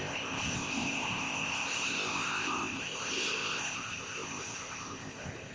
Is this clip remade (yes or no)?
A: yes